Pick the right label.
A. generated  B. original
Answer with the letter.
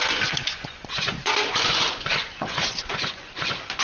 A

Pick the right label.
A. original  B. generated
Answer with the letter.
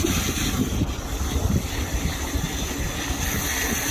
A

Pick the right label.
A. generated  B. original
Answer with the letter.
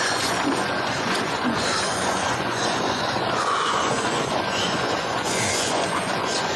A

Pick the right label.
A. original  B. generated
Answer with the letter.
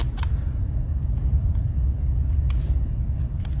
A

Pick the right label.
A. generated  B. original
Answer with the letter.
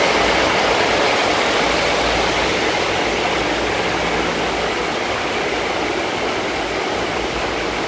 B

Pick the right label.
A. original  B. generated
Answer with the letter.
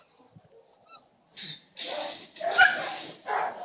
A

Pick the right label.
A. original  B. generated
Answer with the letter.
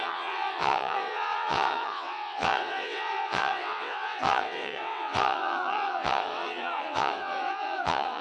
B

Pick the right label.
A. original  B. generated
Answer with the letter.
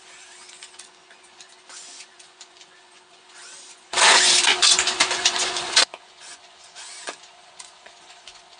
B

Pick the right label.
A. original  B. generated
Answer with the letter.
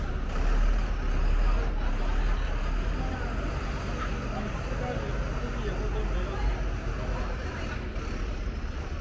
A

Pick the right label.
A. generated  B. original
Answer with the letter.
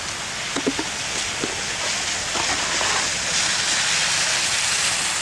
B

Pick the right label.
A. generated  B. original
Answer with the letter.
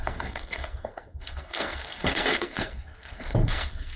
A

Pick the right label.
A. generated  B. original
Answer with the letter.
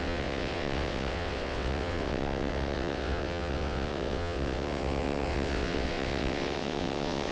A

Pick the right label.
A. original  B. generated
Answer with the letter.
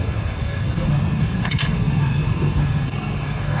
B